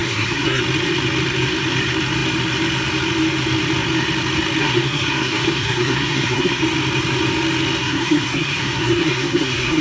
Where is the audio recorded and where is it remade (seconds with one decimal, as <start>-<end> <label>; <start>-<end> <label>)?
0.0-0.6 remade; 0.6-4.6 recorded; 4.6-6.6 remade; 6.6-7.8 recorded; 7.8-9.8 remade